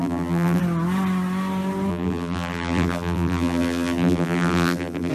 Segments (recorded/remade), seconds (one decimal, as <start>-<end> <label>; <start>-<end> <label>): 0.0-0.6 remade; 0.6-1.9 recorded; 1.9-5.1 remade